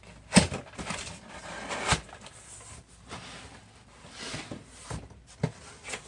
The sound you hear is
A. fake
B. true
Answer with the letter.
B